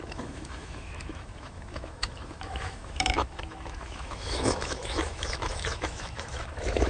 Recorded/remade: remade